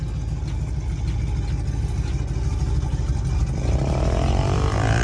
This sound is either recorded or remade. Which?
recorded